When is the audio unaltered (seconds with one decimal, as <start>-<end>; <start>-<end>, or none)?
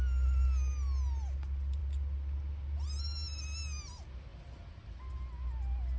0.0-6.0